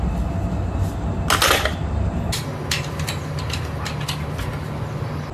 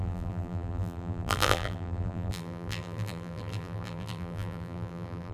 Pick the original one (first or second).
first